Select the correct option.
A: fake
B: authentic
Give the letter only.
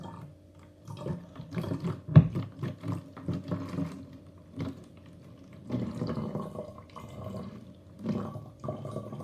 B